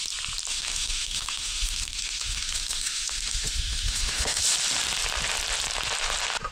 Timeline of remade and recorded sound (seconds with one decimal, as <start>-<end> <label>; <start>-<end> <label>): 0.0-0.5 recorded; 0.5-4.4 remade; 4.4-6.5 recorded